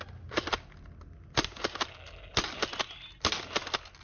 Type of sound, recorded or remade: recorded